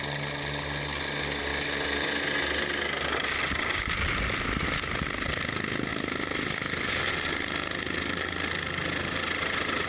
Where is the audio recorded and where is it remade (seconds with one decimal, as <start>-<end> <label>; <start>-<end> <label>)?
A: 0.0-9.9 recorded